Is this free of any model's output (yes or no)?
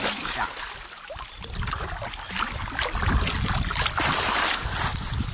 yes